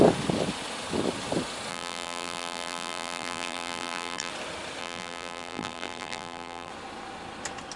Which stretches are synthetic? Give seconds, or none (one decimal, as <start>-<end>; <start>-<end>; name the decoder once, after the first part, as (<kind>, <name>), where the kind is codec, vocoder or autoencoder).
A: 1.7-4.3 (vocoder, BigVGAN v2); 4.8-6.7